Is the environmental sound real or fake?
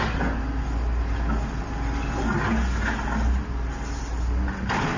real